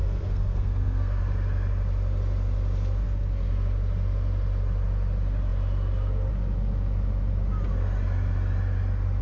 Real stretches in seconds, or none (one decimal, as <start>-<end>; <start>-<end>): 1.2-9.2